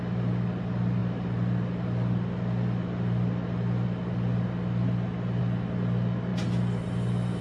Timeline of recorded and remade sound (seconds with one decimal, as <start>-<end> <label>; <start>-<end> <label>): 0.0-7.4 recorded